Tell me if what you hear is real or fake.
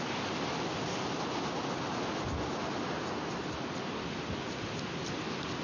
real